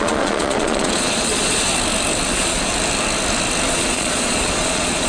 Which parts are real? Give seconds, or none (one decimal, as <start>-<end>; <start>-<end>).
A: 1.7-2.3; 2.7-3.7